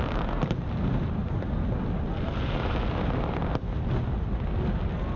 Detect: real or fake real